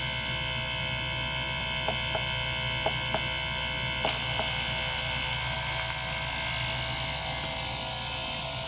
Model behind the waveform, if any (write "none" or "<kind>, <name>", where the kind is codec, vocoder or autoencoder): none